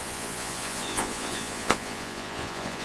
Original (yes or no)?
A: no